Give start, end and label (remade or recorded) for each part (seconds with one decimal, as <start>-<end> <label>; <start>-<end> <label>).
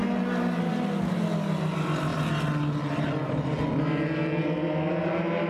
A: 0.0-5.5 recorded